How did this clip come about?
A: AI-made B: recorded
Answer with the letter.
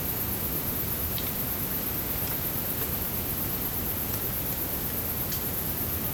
B